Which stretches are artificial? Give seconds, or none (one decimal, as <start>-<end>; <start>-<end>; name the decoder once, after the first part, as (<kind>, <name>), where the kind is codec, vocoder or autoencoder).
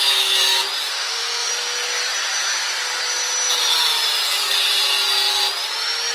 0.9-1.5 (autoencoder, DAC-VAE)